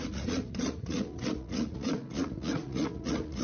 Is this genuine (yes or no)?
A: no